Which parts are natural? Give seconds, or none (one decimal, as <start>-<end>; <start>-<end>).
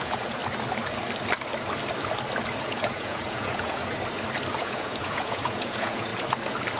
0.4-2.7; 3.9-4.5; 6.1-6.8